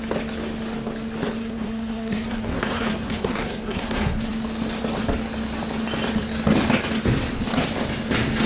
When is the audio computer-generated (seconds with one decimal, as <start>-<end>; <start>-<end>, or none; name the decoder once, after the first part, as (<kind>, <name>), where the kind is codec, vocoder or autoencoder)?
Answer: 1.4-4.3 (codec, SNAC)